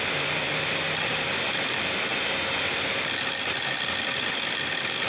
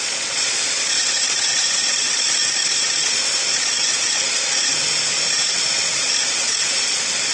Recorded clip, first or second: first